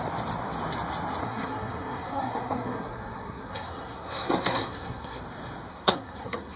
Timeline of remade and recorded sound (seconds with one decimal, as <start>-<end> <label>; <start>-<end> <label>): 0.0-1.2 recorded; 1.2-5.2 remade; 5.2-5.7 recorded; 5.7-6.6 remade

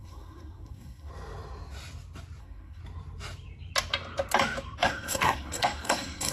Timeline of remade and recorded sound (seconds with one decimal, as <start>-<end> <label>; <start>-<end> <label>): 0.0-1.1 remade; 1.1-2.4 recorded; 2.4-2.8 remade; 2.8-4.8 recorded; 4.8-6.3 remade